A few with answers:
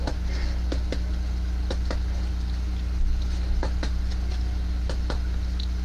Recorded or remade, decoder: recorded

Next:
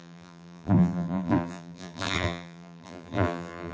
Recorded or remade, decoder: remade, vocoder, BigVGAN v2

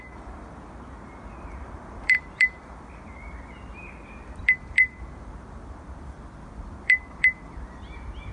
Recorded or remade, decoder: remade, vocoder, BigVGAN v2